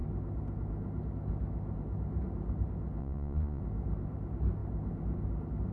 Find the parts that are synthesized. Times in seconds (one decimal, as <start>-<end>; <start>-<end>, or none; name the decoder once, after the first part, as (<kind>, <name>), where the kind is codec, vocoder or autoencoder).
3.0-3.6 (vocoder, Vocos)